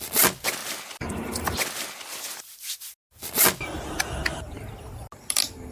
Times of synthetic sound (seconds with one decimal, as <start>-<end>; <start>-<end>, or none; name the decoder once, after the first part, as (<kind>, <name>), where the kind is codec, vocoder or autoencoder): none